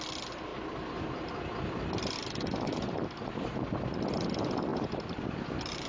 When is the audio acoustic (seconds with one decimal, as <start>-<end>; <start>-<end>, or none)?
0.0-4.7